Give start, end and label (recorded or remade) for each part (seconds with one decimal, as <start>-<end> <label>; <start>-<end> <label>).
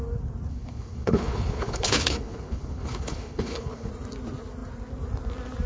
0.0-0.5 recorded; 0.5-3.9 remade; 3.9-5.7 recorded